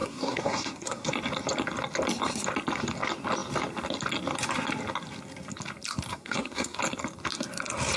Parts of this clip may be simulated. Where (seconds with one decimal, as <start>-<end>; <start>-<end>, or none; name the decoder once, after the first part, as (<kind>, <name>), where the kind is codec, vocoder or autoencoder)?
0.0-1.1 (codec, SNAC); 6.1-6.8